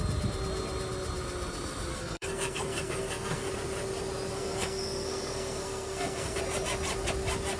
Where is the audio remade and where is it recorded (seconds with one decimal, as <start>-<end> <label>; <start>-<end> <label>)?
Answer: 0.0-1.9 recorded; 1.9-3.5 remade; 3.5-4.3 recorded; 4.3-6.4 remade; 6.4-7.6 recorded